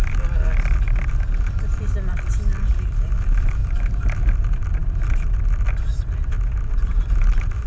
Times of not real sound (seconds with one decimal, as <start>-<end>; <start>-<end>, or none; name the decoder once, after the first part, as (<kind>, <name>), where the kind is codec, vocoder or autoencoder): 3.6-4.3 (vocoder, BigVGAN v2)